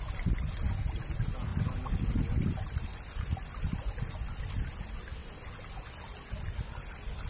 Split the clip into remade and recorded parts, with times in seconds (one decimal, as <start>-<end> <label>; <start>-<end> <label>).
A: 0.0-1.5 recorded; 1.5-4.1 remade; 4.1-5.2 recorded; 5.2-7.3 remade